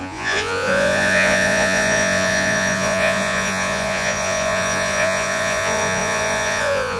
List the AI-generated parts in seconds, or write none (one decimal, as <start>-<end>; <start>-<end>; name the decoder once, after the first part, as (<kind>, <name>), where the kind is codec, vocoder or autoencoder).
0.0-7.0 (vocoder, Vocos)